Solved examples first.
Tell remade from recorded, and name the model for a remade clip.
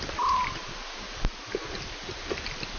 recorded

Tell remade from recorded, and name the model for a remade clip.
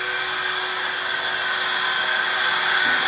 recorded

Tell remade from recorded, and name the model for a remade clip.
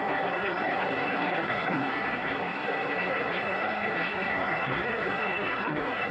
remade, codec, SNAC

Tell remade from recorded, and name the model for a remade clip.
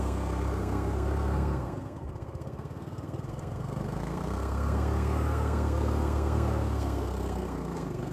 remade, codec, SNAC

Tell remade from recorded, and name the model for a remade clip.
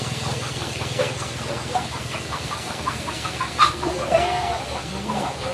remade, codec, SNAC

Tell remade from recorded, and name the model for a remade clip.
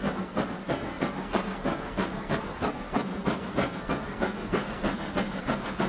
remade, codec, SNAC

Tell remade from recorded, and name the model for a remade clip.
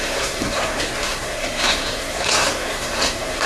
remade, codec, SNAC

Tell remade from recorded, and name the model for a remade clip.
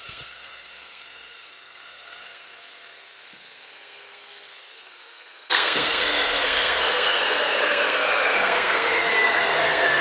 remade, codec, SNAC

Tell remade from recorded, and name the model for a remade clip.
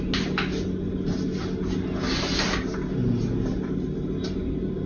recorded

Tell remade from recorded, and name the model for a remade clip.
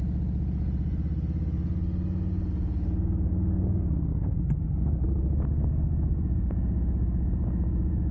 recorded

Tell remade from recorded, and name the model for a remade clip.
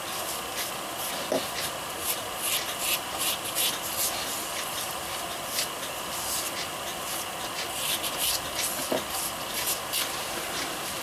recorded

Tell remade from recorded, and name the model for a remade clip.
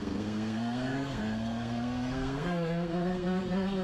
remade, codec, SNAC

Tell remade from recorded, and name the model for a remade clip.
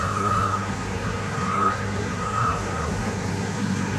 remade, codec, SNAC